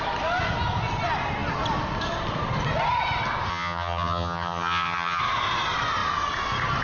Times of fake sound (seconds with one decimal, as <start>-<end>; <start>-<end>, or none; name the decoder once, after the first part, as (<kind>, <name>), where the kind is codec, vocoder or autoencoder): 3.5-5.2 (vocoder, HiFi-GAN)